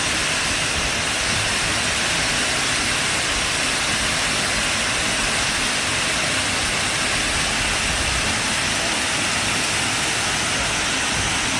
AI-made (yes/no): no